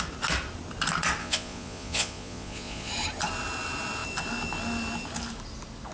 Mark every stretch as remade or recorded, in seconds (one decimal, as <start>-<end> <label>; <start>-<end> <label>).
0.0-1.2 recorded; 1.2-2.9 remade; 2.9-5.9 recorded